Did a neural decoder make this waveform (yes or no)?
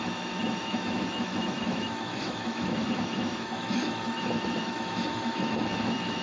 yes